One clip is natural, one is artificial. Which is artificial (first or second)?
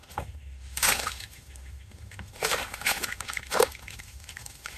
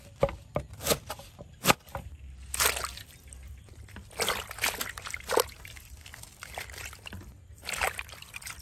first